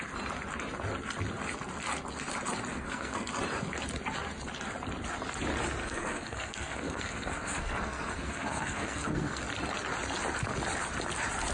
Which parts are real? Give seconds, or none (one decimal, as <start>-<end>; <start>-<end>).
0.0-2.7; 3.3-5.8; 9.4-11.5